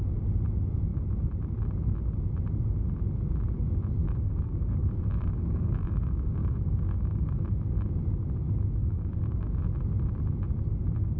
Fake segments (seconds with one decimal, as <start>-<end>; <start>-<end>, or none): 4.0-7.4; 8.8-9.5